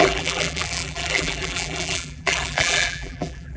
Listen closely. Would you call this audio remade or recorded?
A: remade